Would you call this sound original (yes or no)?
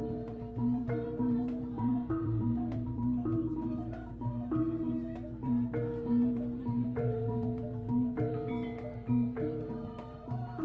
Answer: no